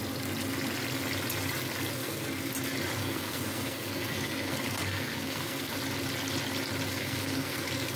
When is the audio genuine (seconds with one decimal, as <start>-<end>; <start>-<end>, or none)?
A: 0.0-2.0; 2.5-3.0; 5.7-6.9